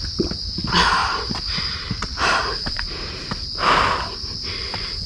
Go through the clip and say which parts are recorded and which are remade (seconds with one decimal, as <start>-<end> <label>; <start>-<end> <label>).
0.0-1.0 recorded; 1.0-3.2 remade; 3.2-5.1 recorded